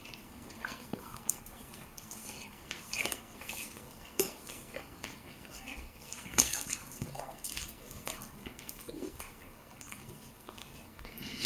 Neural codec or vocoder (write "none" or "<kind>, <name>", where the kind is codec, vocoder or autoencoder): codec, SNAC